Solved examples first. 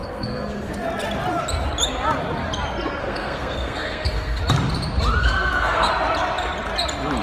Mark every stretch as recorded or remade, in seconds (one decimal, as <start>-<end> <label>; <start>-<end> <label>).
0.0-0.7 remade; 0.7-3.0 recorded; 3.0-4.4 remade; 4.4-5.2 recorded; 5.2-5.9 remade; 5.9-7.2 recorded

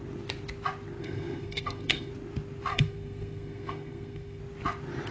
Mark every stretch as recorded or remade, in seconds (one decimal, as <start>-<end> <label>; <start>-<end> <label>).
0.0-1.0 recorded; 1.0-2.1 remade; 2.1-2.7 recorded; 2.7-4.4 remade; 4.4-5.1 recorded

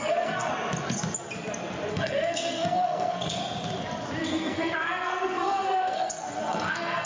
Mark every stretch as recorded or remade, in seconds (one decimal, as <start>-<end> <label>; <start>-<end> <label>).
0.0-0.5 remade; 0.5-1.9 recorded; 1.9-3.4 remade; 3.4-4.2 recorded; 4.2-7.1 remade

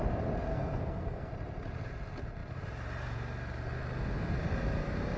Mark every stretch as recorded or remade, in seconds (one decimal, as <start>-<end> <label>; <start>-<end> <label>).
0.0-0.5 recorded; 0.5-1.3 remade; 1.3-5.2 recorded

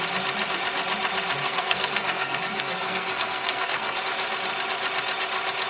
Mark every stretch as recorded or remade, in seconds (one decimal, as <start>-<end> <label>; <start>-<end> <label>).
0.0-1.4 recorded; 1.4-4.0 remade; 4.0-5.7 recorded